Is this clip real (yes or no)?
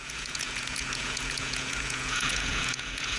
no